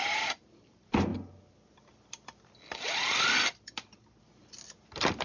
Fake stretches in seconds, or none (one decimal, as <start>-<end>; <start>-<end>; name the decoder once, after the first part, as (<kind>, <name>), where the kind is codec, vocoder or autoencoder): none